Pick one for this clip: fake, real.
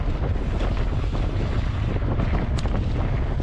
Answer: real